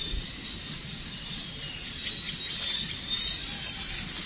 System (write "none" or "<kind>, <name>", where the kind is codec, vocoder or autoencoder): none